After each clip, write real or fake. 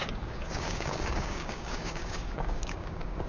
fake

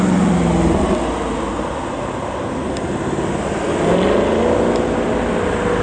real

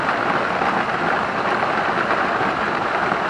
real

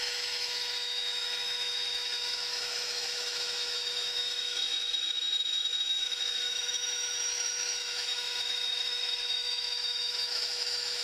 fake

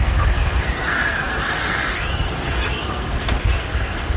fake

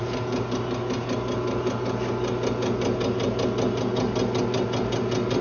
real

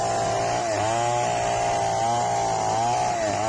real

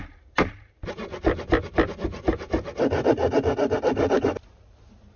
real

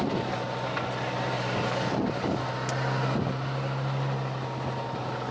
real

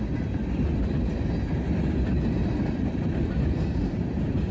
real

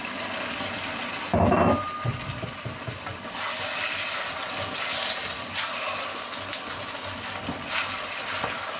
real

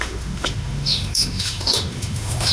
fake